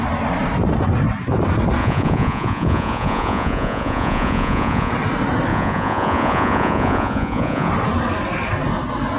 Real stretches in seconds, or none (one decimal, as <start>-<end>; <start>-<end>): 0.0-1.8; 4.9-5.5; 7.7-9.2